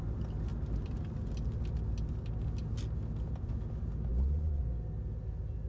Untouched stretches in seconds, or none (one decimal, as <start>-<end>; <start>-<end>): 0.0-4.1; 4.6-5.7